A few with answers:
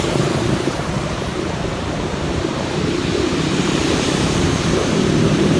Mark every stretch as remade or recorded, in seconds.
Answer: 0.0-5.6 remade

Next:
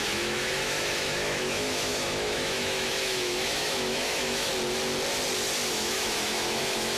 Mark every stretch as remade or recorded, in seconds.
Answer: 0.0-4.5 remade; 4.5-5.7 recorded; 5.7-7.0 remade

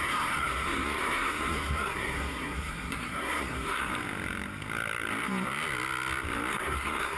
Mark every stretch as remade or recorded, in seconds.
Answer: 0.0-3.9 remade; 3.9-6.5 recorded; 6.5-7.2 remade

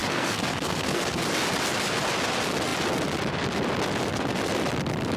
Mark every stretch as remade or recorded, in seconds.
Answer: 0.0-1.2 remade; 1.2-5.2 recorded